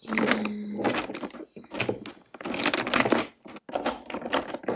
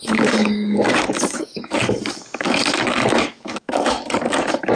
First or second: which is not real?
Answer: second